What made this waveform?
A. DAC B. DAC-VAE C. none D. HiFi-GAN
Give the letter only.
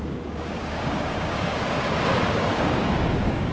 A